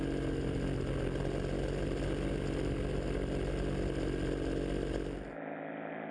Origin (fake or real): real